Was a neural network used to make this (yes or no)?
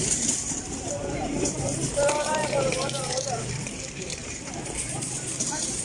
yes